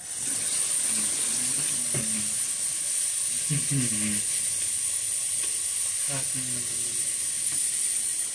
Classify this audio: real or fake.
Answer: real